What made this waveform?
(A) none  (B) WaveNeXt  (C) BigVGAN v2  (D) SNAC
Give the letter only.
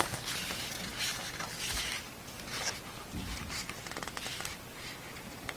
A